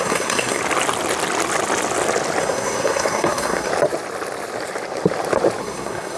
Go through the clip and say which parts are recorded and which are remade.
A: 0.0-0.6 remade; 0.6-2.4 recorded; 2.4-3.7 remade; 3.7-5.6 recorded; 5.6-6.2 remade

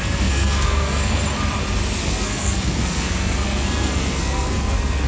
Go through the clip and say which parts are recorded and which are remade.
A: 0.0-1.2 remade; 1.2-2.0 recorded; 2.0-5.1 remade

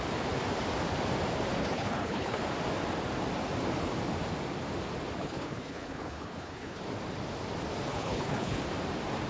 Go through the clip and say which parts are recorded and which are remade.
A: 0.0-1.6 recorded; 1.6-2.4 remade; 2.4-5.2 recorded; 5.2-6.8 remade; 6.8-7.9 recorded; 7.9-8.6 remade; 8.6-9.3 recorded

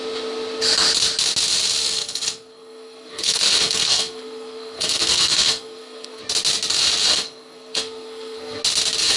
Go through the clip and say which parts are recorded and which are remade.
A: 0.0-1.8 recorded; 1.8-6.2 remade; 6.2-7.1 recorded; 7.1-8.6 remade; 8.6-9.2 recorded

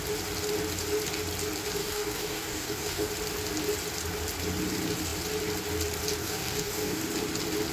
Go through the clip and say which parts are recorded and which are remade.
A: 0.0-1.8 recorded; 1.8-3.1 remade; 3.1-6.2 recorded; 6.2-7.0 remade; 7.0-7.7 recorded

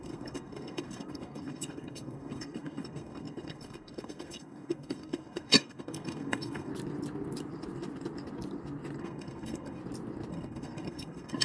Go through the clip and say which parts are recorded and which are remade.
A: 0.0-6.7 remade; 6.7-9.0 recorded; 9.0-9.8 remade; 9.8-10.3 recorded; 10.3-11.4 remade

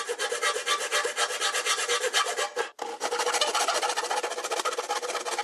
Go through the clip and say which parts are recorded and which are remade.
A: 0.0-5.4 recorded

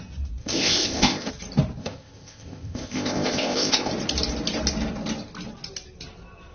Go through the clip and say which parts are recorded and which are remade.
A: 0.0-0.4 recorded; 0.4-1.3 remade; 1.3-1.8 recorded; 1.8-3.9 remade; 3.9-6.5 recorded